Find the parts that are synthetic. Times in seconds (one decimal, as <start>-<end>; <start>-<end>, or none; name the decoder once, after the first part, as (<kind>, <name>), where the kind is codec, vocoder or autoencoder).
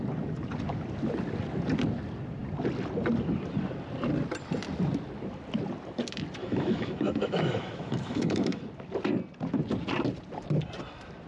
6.4-8.6 (autoencoder, DAC-VAE)